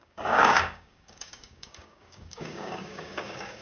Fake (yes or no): yes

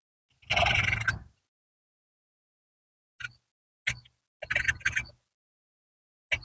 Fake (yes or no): no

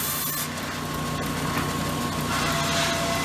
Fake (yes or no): no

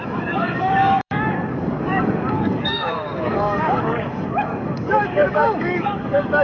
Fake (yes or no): yes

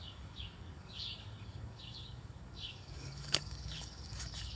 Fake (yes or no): yes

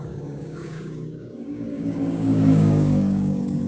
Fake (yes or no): yes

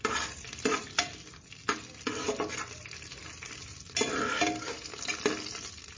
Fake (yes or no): no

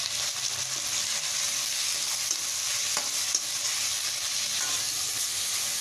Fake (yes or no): no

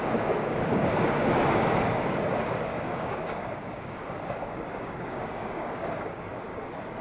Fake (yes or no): yes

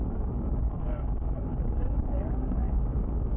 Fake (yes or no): yes